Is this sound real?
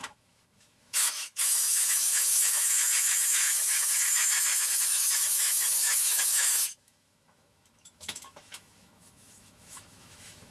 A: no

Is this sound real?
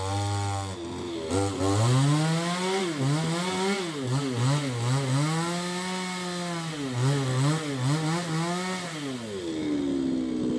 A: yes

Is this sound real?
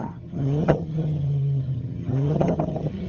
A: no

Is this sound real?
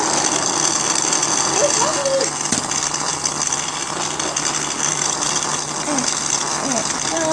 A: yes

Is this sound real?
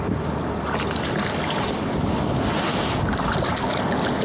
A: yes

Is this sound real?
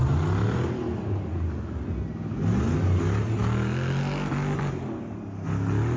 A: yes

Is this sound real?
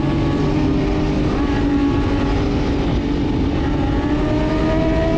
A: yes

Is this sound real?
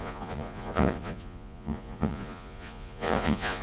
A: no